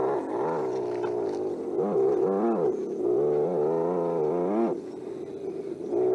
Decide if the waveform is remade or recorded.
recorded